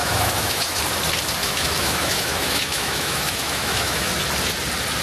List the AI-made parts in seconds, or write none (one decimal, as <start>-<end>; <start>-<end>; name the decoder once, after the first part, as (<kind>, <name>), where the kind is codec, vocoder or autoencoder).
0.0-0.8 (autoencoder, DAC-VAE); 1.4-4.1